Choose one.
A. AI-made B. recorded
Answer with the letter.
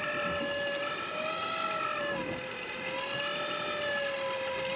B